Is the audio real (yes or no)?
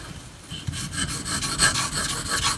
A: yes